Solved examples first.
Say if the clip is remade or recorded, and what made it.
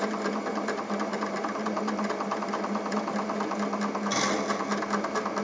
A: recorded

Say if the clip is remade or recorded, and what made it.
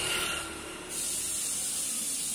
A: recorded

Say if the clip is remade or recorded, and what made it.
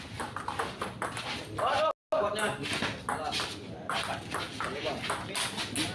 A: recorded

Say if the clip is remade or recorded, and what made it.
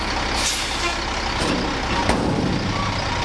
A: recorded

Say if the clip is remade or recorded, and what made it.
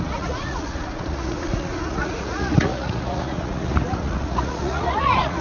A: remade, vocoder, Vocos